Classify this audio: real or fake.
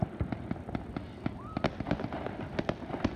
real